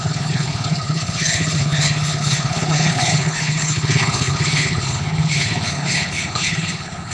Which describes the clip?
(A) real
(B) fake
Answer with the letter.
B